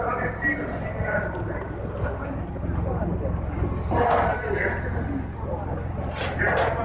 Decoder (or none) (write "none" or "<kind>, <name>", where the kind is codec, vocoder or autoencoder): none